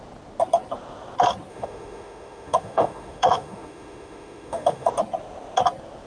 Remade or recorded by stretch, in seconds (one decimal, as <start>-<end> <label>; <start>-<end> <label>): 0.0-1.5 recorded; 1.5-4.9 remade; 4.9-6.1 recorded